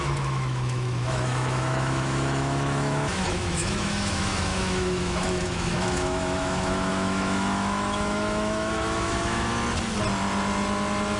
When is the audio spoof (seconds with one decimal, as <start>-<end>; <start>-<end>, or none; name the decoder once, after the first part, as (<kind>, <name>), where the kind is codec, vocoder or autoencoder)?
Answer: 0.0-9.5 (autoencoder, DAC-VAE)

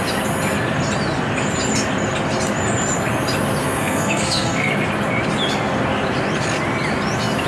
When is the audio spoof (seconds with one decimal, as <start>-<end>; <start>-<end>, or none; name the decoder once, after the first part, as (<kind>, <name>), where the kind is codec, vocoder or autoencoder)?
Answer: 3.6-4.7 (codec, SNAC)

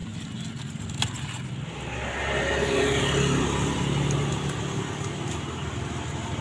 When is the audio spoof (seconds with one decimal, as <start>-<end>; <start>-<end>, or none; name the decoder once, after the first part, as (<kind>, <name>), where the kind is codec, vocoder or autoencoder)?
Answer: none